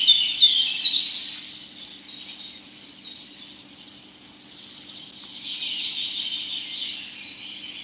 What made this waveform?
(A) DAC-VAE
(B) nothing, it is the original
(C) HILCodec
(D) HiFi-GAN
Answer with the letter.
B